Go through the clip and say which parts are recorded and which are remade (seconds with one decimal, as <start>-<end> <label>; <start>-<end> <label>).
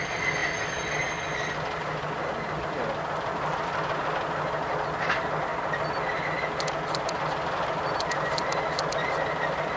0.0-9.8 recorded